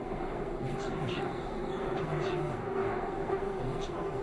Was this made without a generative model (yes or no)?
no